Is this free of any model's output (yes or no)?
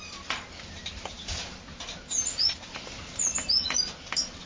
yes